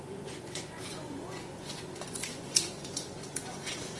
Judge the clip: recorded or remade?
remade